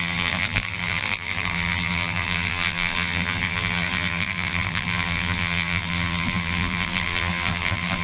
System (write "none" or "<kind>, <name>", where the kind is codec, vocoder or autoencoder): vocoder, BigVGAN v2